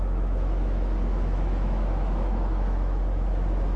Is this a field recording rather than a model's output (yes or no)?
no